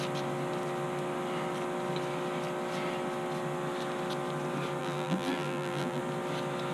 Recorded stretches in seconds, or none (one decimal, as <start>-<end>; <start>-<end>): 0.0-4.8; 6.0-6.7